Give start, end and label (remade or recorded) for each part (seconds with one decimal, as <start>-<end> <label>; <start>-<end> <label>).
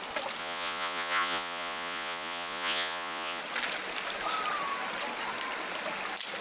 0.0-0.4 recorded; 0.4-3.4 remade; 3.4-6.4 recorded